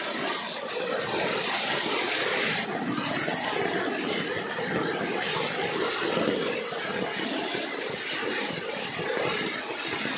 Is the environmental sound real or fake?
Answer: real